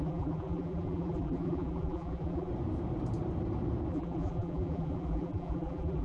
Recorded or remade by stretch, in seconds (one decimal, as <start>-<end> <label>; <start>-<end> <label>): 0.0-2.5 remade; 2.5-3.9 recorded; 3.9-6.0 remade